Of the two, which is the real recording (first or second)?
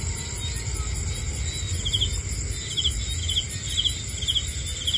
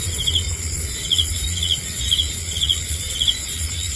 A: first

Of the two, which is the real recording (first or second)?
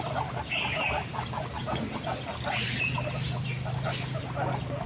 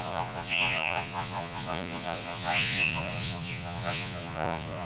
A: first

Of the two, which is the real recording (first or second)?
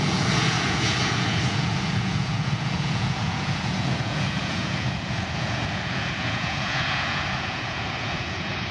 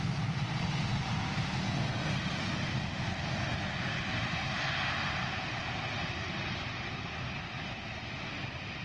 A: second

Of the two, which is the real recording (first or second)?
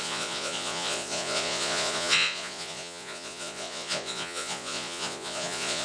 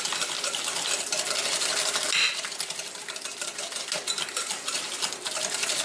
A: second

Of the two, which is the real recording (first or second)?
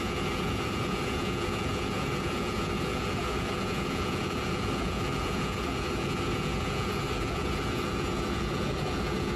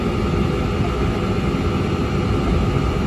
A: second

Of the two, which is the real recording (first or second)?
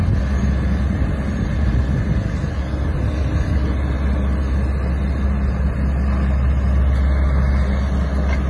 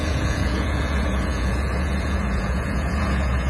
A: first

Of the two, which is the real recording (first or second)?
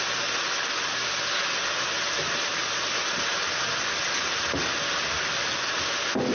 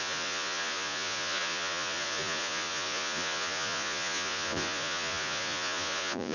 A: first